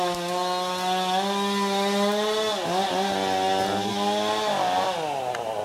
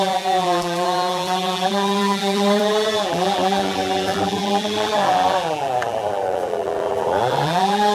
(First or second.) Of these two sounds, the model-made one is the second